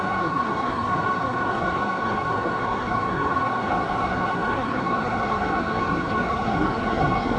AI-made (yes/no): yes